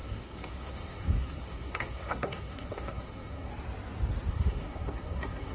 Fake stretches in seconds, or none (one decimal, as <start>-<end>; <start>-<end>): 0.0-3.5; 4.3-5.5